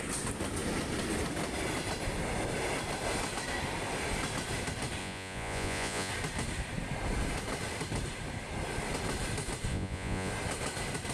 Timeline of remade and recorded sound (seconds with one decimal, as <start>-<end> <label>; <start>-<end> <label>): 0.0-5.0 recorded; 5.0-6.1 remade; 6.1-9.7 recorded; 9.7-10.3 remade; 10.3-11.1 recorded